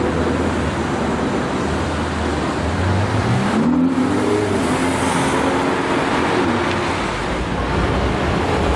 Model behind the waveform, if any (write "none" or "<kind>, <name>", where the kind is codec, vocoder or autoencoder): none